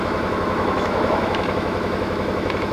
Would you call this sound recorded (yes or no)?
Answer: no